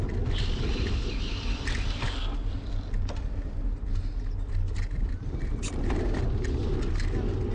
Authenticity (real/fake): real